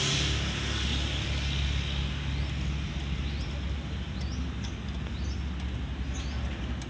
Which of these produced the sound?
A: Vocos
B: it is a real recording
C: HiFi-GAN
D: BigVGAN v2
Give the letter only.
B